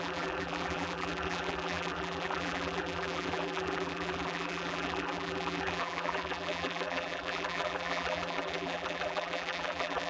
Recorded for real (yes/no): no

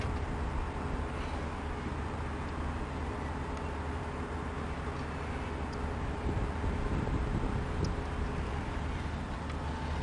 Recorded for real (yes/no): yes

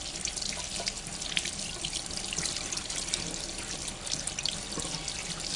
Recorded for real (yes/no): yes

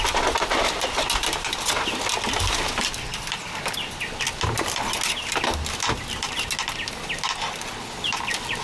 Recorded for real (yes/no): yes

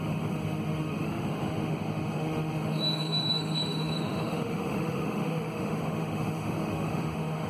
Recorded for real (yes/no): no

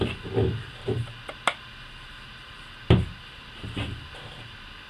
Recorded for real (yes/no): yes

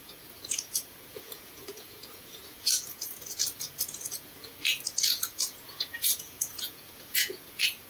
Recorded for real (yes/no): no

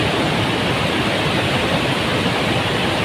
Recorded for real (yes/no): yes